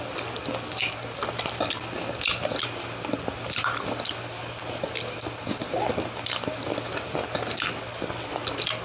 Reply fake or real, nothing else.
real